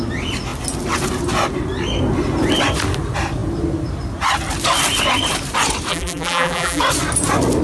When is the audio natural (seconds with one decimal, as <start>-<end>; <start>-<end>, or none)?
0.0-5.9; 6.8-7.6